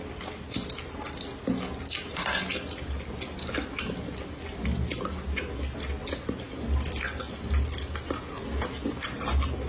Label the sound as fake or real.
real